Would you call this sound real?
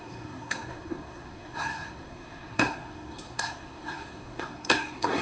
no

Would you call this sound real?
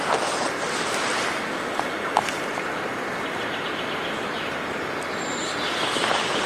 yes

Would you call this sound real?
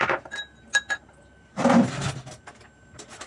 yes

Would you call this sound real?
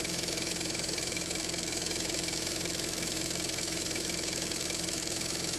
no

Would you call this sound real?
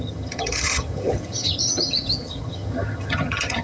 no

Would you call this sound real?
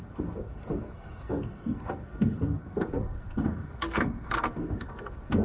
no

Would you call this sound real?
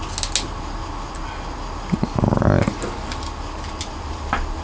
yes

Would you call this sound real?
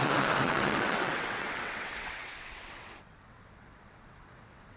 no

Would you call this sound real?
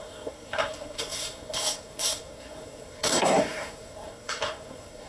no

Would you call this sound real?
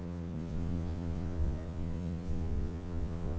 no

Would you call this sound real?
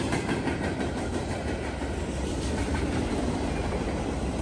yes